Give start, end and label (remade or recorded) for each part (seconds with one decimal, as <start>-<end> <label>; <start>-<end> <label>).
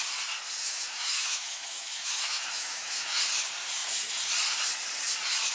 0.0-0.6 recorded; 0.6-3.2 remade; 3.2-5.5 recorded